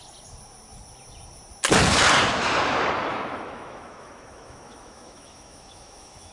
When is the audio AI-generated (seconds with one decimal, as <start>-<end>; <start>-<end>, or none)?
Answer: 3.1-6.3